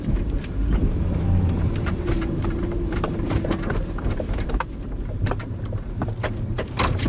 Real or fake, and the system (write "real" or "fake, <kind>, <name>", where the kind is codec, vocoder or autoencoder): fake, vocoder, BigVGAN v2